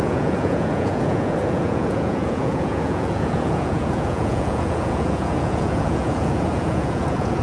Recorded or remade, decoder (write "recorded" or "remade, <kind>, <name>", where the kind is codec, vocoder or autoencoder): remade, vocoder, Vocos